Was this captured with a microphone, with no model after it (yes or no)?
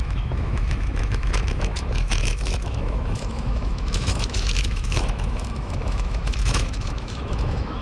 no